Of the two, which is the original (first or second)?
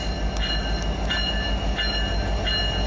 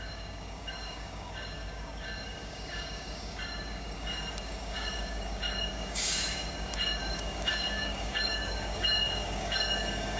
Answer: first